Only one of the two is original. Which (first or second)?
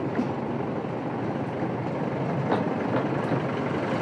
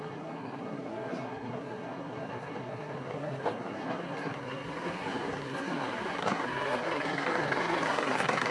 first